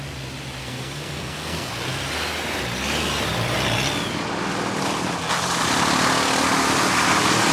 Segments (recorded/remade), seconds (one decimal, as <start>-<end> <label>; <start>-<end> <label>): 0.0-0.6 recorded; 0.6-1.7 remade; 1.7-7.5 recorded